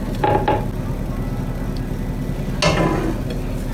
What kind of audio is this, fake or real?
real